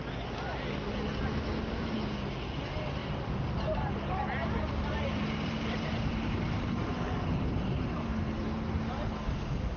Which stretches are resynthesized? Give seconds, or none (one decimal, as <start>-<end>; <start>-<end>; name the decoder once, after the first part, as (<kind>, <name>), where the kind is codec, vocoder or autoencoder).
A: 3.0-3.9 (vocoder, BigVGAN v2); 4.4-6.6